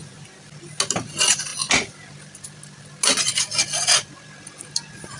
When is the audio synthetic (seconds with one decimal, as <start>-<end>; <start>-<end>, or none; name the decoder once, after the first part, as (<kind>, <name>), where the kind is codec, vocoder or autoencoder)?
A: none